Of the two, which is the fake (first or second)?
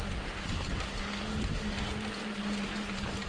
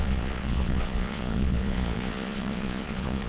second